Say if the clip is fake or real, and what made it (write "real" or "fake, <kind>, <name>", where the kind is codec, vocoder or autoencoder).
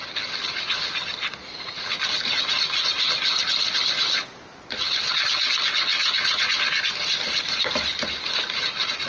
real